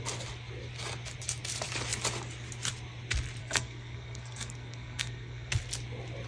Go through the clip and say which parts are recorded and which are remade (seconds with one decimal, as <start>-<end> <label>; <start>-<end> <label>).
0.0-3.4 recorded; 3.4-5.5 remade; 5.5-6.3 recorded

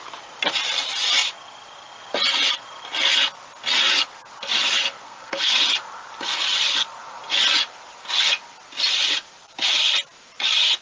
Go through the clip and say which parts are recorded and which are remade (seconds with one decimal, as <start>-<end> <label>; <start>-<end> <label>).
0.0-5.0 recorded; 5.0-5.6 remade; 5.6-10.8 recorded

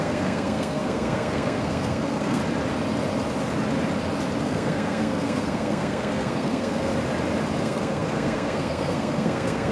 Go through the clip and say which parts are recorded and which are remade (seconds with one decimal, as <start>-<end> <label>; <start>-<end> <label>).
0.0-2.4 remade; 2.4-4.4 recorded; 4.4-6.9 remade; 6.9-7.6 recorded; 7.6-9.7 remade